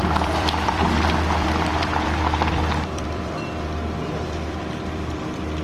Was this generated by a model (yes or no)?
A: yes